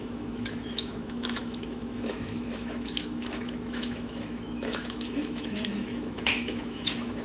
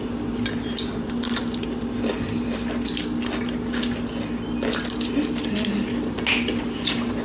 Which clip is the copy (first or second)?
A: first